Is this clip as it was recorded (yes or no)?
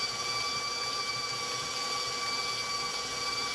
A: yes